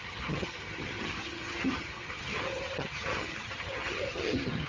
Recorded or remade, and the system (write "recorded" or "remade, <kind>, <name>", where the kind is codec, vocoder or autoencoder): remade, vocoder, HiFi-GAN